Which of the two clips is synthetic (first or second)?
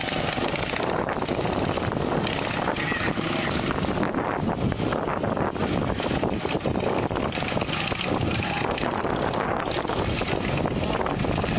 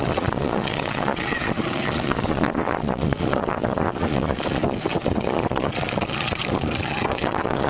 second